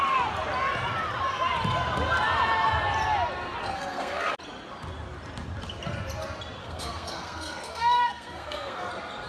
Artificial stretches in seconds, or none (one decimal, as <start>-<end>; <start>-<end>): 3.6-4.3; 6.6-8.9